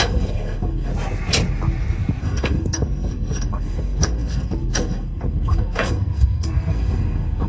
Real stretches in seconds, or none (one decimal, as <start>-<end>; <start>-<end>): 0.9-2.2